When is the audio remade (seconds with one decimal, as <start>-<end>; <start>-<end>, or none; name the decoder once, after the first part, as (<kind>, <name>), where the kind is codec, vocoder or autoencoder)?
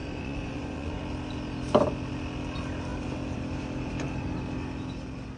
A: 0.0-1.0 (vocoder, Vocos)